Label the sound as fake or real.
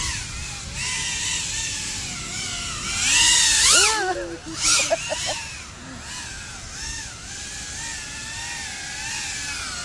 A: real